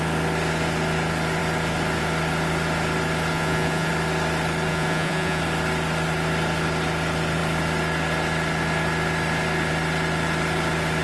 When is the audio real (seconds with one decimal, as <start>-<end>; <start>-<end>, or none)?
0.0-3.3; 3.9-4.7; 5.4-11.0